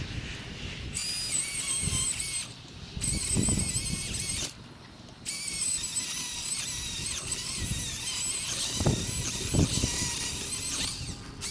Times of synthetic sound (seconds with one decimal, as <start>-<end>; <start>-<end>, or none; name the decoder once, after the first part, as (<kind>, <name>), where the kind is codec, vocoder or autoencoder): none